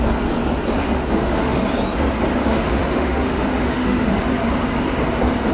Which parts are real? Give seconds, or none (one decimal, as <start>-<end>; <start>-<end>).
0.0-0.8; 1.6-2.4; 4.2-5.5